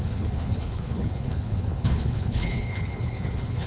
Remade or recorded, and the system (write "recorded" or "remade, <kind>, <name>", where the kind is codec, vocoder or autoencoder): remade, codec, HILCodec